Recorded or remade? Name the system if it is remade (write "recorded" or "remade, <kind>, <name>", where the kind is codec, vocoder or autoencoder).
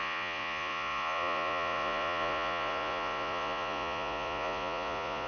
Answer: remade, vocoder, Vocos